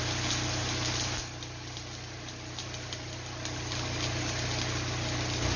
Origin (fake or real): real